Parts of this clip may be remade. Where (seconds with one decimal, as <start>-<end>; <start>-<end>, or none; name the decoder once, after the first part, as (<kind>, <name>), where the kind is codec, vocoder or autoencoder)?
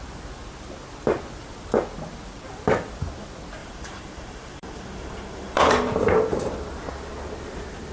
3.6-5.6 (vocoder, BigVGAN v2)